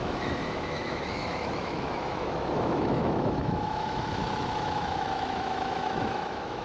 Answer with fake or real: fake